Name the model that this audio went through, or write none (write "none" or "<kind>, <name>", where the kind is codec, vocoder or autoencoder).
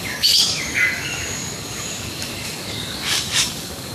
codec, DAC